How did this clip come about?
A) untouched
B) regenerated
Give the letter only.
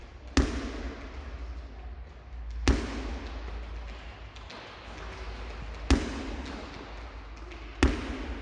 A